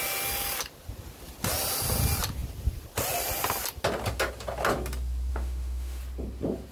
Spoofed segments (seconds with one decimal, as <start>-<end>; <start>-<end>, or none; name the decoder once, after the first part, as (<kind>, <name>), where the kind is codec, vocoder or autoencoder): 5.3-6.0 (autoencoder, DAC-VAE)